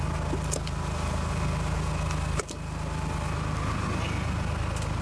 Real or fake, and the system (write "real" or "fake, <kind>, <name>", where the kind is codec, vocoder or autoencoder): real